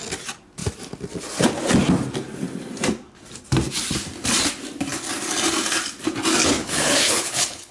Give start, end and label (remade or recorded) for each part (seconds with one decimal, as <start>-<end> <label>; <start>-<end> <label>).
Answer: 0.0-6.6 recorded; 6.6-7.7 remade